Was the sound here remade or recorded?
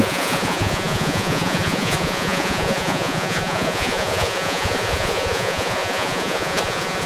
remade